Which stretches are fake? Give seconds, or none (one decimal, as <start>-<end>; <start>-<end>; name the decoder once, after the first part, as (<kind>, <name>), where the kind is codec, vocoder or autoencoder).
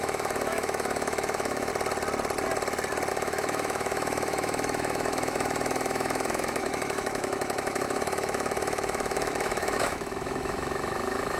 0.0-1.7 (autoencoder, DAC-VAE); 3.1-11.4